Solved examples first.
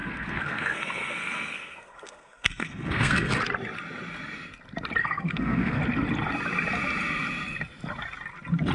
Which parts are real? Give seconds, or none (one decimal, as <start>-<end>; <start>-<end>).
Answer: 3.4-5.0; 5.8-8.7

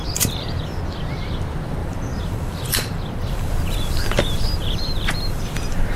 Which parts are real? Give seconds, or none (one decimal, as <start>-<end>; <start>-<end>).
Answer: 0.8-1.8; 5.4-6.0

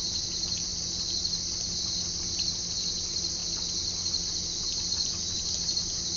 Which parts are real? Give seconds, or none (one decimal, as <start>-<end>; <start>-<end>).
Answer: 0.0-0.7; 2.5-3.4; 4.2-6.2

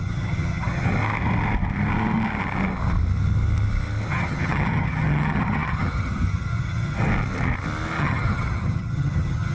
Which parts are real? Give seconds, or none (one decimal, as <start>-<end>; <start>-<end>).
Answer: 0.9-4.1; 7.1-8.0